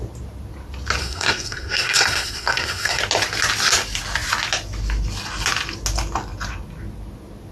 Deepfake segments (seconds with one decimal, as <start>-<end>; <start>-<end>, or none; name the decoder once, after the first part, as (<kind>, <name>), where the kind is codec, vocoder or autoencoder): 1.0-3.0 (codec, SNAC)